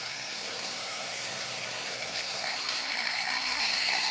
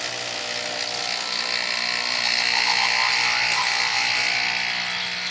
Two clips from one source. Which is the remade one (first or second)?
first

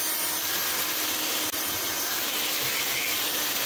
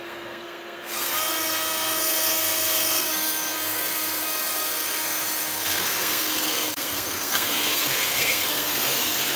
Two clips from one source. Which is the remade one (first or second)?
second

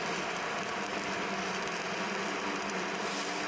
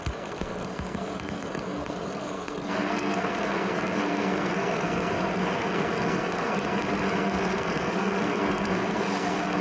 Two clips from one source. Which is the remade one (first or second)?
second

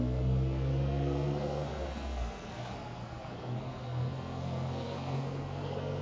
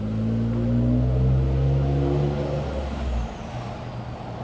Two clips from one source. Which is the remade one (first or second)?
first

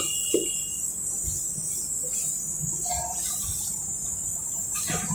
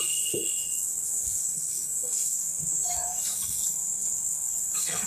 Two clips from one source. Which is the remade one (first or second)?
second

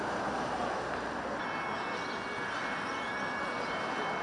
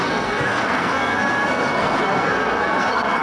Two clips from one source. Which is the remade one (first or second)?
second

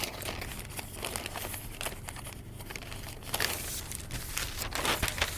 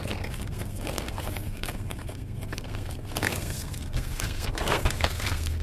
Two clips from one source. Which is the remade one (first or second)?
second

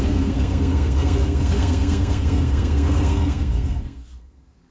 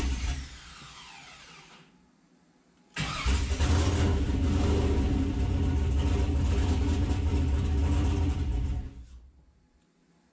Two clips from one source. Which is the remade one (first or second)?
first